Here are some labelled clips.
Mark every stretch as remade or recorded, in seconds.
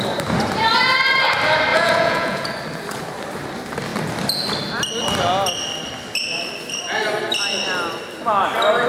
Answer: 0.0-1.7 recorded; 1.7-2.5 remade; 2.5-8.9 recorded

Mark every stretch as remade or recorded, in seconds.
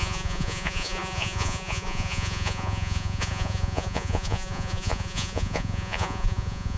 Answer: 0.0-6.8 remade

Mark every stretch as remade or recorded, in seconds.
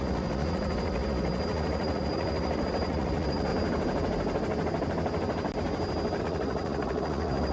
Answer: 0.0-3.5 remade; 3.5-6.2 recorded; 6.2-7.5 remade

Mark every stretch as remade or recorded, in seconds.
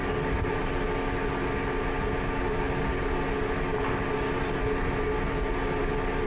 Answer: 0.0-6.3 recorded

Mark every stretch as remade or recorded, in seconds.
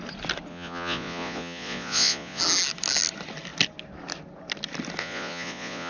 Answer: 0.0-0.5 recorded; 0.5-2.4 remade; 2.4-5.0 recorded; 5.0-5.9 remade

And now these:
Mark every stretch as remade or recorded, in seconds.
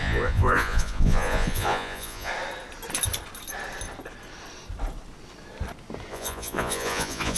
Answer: 0.0-2.3 remade; 2.3-6.1 recorded; 6.1-7.4 remade